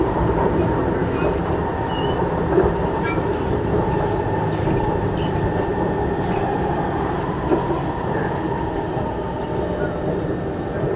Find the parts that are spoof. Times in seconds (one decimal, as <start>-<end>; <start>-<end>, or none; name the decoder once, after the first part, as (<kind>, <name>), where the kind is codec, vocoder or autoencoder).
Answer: 5.7-6.3 (vocoder, BigVGAN v2)

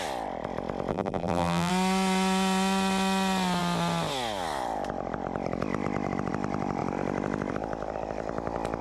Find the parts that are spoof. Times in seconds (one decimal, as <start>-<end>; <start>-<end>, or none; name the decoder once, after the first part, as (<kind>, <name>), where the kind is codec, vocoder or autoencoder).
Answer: 0.9-1.7 (vocoder, BigVGAN v2)

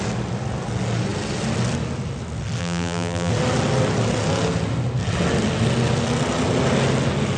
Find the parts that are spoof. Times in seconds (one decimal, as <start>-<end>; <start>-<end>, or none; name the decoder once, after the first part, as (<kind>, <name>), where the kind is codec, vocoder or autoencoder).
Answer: 2.6-3.3 (vocoder, BigVGAN v2)

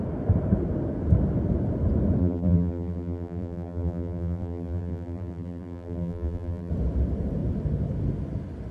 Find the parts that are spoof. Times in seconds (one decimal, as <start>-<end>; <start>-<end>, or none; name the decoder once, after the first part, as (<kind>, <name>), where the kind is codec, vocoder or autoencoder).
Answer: 2.2-6.7 (vocoder, BigVGAN v2)

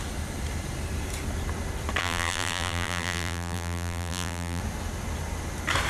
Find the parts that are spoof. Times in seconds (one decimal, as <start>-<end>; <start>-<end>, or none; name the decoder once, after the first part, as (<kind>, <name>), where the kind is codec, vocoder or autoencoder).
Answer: 2.0-4.6 (vocoder, BigVGAN v2)

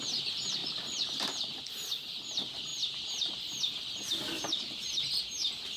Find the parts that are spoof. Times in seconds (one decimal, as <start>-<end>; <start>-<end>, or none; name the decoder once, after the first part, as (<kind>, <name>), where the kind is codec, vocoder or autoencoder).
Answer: none